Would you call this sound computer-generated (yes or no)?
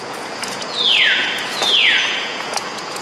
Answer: yes